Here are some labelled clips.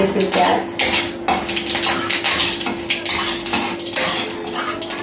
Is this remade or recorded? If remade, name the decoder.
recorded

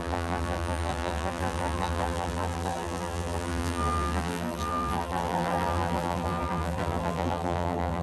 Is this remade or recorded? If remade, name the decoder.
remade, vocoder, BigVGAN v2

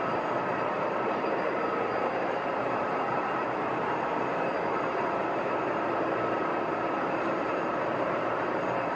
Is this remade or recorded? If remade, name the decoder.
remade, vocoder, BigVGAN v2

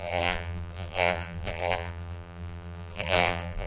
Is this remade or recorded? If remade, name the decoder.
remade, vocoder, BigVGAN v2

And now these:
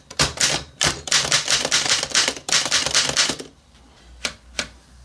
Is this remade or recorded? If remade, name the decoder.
remade, vocoder, BigVGAN v2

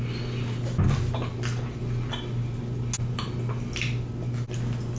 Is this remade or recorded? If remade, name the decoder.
recorded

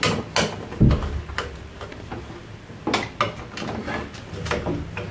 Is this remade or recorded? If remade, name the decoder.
recorded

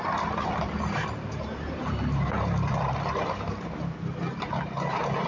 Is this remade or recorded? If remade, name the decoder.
remade, vocoder, BigVGAN v2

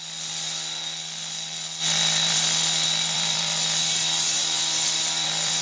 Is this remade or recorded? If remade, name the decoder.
remade, vocoder, BigVGAN v2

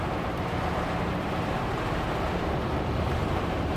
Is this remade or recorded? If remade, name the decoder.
remade, vocoder, BigVGAN v2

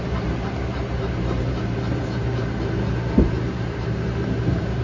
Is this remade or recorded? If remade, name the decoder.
remade, vocoder, BigVGAN v2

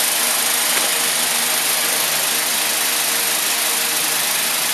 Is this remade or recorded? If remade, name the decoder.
recorded